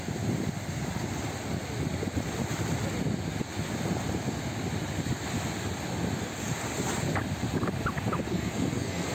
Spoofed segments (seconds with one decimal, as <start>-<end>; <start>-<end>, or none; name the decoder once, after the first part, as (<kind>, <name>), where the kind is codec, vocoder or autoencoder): 8.3-9.1 (codec, SNAC)